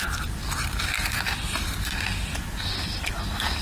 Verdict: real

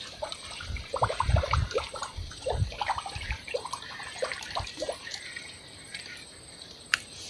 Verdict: fake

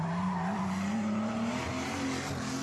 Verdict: real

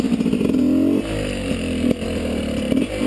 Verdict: real